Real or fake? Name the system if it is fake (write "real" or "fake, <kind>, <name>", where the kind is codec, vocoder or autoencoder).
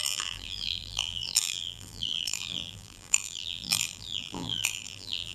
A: fake, vocoder, BigVGAN v2